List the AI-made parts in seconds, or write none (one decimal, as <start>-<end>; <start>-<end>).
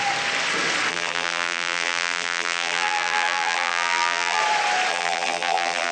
0.9-4.4; 4.9-5.9